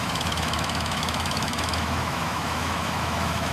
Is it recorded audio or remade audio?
remade